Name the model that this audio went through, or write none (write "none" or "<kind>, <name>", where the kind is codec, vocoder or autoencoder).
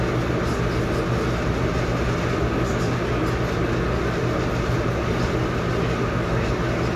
none